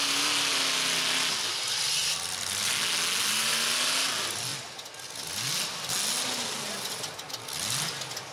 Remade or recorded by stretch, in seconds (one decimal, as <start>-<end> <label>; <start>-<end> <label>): 0.0-8.3 recorded